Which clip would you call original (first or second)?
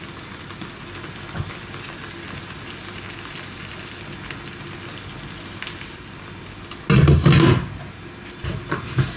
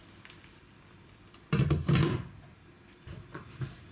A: first